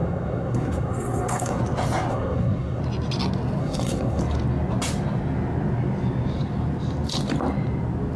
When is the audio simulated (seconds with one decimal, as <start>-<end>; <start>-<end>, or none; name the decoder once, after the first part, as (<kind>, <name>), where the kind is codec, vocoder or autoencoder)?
0.0-1.6 (codec, SNAC); 2.1-2.8; 3.6-4.2

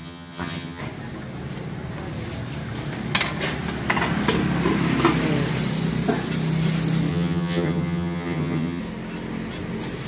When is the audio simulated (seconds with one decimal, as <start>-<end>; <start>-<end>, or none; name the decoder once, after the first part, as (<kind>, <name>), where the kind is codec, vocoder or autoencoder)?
0.0-0.8 (vocoder, HiFi-GAN); 7.1-8.8

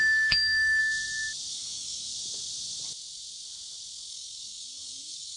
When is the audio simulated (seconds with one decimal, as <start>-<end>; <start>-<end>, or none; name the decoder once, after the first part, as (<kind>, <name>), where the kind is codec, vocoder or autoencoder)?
0.0-0.8 (codec, DAC); 1.5-2.1; 4.1-5.4

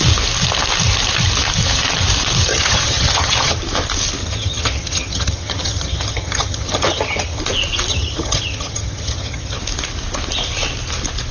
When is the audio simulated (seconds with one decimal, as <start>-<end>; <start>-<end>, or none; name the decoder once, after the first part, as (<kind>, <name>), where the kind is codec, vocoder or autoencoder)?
2.5-3.6 (vocoder, HiFi-GAN); 4.2-7.4; 7.9-9.6

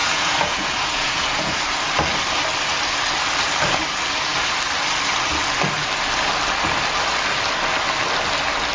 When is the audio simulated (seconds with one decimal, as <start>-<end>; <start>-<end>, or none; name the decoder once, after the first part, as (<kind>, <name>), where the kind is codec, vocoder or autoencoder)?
0.0-1.6 (vocoder, Vocos)

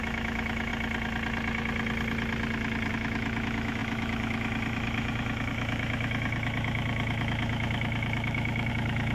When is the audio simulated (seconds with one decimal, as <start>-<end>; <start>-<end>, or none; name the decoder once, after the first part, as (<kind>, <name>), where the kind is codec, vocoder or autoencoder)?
0.0-0.7 (autoencoder, DAC-VAE); 2.9-9.1

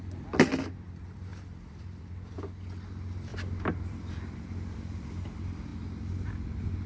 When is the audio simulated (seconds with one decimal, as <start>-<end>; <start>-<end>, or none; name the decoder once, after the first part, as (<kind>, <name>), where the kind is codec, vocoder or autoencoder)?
1.3-2.4 (vocoder, BigVGAN v2); 3.3-4.1